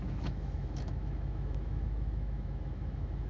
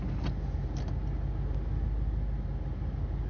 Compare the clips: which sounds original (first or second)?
second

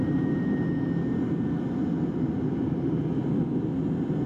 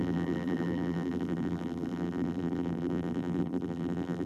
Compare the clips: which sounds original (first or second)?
first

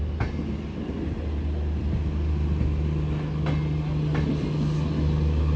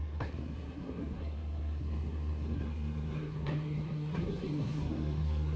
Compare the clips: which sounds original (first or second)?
first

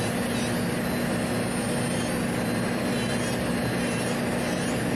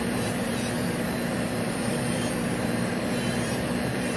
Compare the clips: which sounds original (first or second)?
first